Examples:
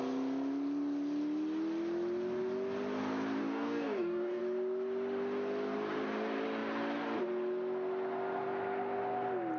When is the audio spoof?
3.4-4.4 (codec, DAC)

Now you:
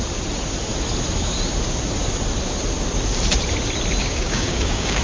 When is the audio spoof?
4.0-5.0 (codec, DAC)

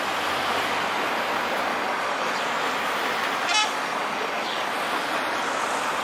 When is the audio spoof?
1.7-2.4 (codec, DAC); 3.6-4.7

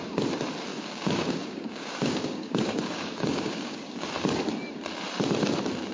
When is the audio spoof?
0.7-4.1 (codec, DAC)